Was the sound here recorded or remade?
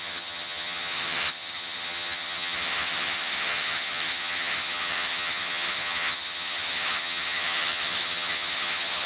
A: remade